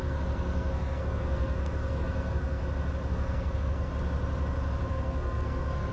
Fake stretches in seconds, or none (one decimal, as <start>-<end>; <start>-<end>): 0.0-2.6; 3.1-3.9; 4.9-5.9